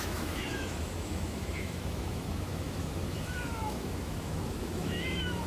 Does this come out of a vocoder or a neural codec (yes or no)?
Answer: yes